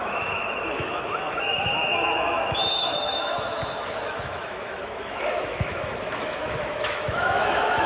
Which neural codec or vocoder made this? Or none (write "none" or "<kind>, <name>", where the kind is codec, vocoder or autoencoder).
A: autoencoder, DAC-VAE